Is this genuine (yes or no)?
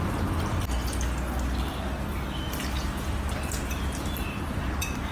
yes